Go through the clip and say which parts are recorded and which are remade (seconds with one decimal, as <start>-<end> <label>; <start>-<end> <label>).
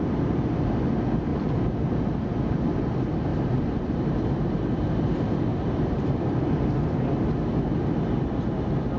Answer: 0.0-1.3 recorded; 1.3-2.0 remade; 2.0-3.3 recorded; 3.3-4.5 remade; 4.5-5.5 recorded; 5.5-6.2 remade; 6.2-9.0 recorded